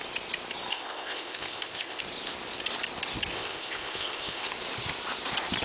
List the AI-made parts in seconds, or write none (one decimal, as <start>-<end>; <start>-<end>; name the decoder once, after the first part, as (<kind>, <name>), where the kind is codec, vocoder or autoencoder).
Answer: 0.7-2.0 (codec, ZipCodec); 3.3-4.5